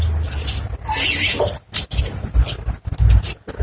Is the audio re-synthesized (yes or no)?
no